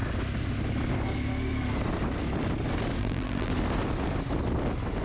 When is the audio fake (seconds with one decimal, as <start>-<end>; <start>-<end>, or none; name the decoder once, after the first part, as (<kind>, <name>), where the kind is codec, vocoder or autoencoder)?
3.0-3.5 (vocoder, BigVGAN v2)